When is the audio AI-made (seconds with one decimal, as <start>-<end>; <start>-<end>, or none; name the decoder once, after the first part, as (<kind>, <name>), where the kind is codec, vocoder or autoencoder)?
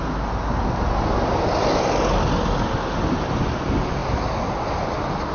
none